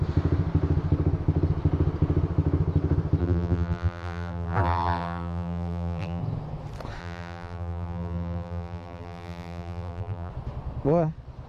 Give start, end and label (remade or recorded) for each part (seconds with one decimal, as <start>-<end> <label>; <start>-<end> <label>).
0.0-3.2 recorded; 3.2-6.2 remade; 6.2-7.0 recorded; 7.0-10.3 remade; 10.3-11.5 recorded